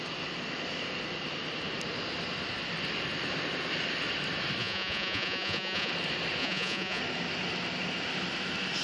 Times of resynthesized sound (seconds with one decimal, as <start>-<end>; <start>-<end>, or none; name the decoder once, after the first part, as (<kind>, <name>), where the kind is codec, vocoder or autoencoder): 4.6-5.9 (vocoder, Vocos); 6.4-7.0